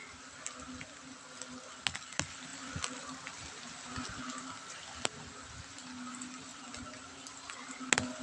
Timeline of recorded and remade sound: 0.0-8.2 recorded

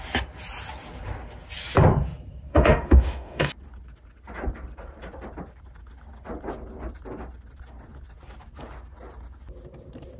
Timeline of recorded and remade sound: 0.0-2.5 recorded; 2.5-3.5 remade; 3.5-10.2 recorded

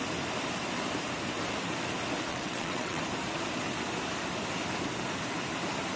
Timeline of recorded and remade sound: 0.0-2.3 recorded; 2.3-3.0 remade; 3.0-6.0 recorded

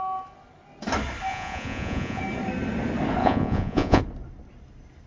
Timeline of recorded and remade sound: 0.0-1.3 recorded; 1.3-2.2 remade; 2.2-3.2 recorded; 3.2-4.0 remade; 4.0-5.1 recorded

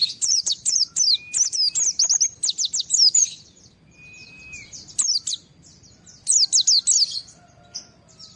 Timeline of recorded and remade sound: 0.0-0.9 remade; 0.9-3.0 recorded; 3.0-3.7 remade; 3.7-4.2 recorded; 4.2-5.0 remade; 5.0-8.4 recorded